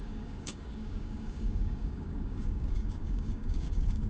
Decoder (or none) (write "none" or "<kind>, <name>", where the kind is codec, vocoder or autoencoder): codec, DAC